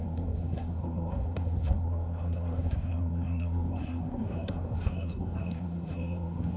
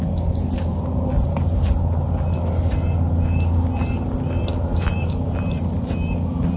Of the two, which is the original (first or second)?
second